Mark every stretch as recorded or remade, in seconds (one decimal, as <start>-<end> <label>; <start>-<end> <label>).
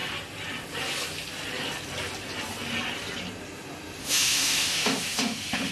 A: 0.0-4.0 recorded; 4.0-5.7 remade